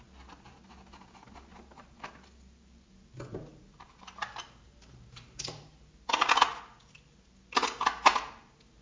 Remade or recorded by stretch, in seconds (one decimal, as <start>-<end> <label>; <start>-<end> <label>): 0.0-1.5 recorded; 1.5-2.1 remade; 2.1-3.5 recorded; 3.5-5.9 remade; 5.9-8.8 recorded